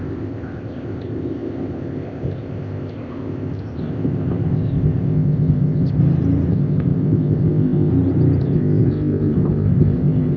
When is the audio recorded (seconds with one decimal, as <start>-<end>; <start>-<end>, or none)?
6.0-6.5; 7.9-8.4

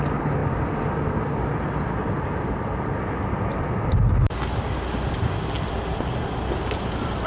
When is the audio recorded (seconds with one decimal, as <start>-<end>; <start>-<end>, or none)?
0.0-7.3

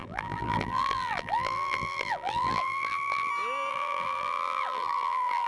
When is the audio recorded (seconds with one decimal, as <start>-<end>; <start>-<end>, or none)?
3.3-3.7

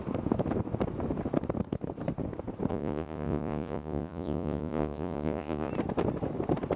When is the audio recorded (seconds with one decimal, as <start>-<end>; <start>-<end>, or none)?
0.0-2.7; 5.7-6.8

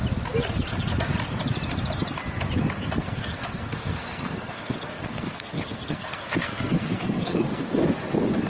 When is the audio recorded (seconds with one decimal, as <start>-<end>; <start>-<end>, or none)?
0.0-2.8; 7.8-8.5